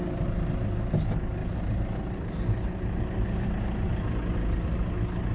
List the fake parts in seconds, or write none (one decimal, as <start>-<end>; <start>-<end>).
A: 1.4-3.6